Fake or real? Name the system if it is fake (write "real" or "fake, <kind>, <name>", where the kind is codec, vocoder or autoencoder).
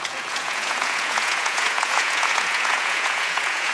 fake, vocoder, Vocos